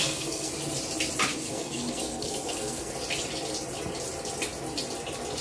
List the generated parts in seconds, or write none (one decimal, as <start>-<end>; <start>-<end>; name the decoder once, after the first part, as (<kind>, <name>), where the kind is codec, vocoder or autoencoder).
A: 0.0-0.5 (codec, SNAC); 1.3-2.9